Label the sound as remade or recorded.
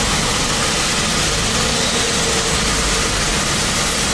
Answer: recorded